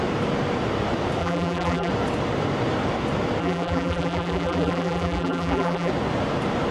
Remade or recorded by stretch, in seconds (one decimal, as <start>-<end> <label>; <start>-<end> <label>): 0.0-1.2 recorded; 1.2-1.9 remade; 1.9-3.4 recorded; 3.4-5.9 remade; 5.9-6.7 recorded

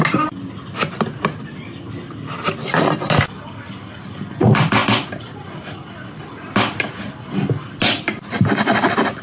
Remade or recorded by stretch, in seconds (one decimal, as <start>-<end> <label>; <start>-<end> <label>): 0.0-9.2 recorded

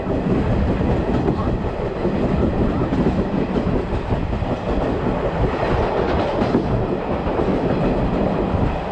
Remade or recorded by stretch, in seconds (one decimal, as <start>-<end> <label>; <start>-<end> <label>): 0.0-2.8 recorded; 2.8-5.0 remade; 5.0-8.9 recorded

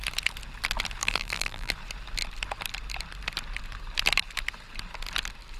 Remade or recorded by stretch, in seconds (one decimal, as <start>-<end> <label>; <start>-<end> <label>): 0.0-1.0 recorded; 1.0-1.7 remade; 1.7-5.6 recorded